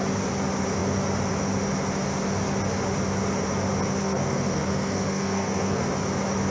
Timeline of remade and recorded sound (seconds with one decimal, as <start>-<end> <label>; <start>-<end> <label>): 0.0-4.0 recorded; 4.0-5.8 remade; 5.8-6.5 recorded